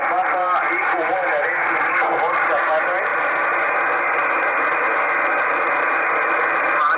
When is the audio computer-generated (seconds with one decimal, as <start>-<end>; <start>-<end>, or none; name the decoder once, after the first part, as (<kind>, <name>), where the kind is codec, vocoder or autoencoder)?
none